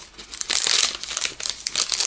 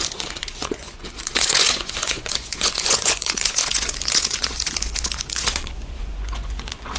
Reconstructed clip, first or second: second